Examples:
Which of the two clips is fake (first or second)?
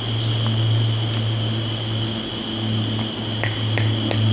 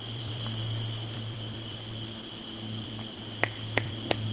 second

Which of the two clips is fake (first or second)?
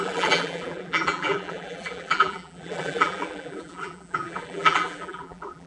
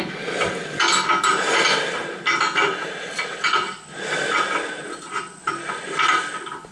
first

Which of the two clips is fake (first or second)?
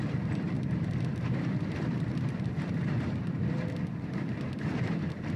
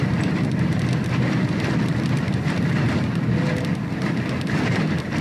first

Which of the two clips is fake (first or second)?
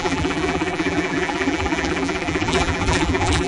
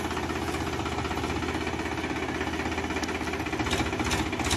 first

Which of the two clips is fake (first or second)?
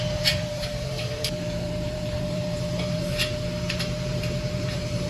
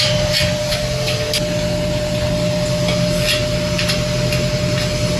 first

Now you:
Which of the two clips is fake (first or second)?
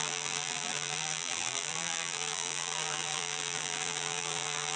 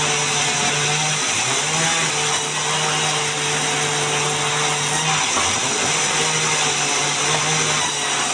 first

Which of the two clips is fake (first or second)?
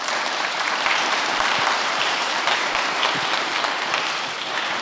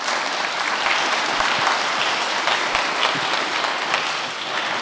first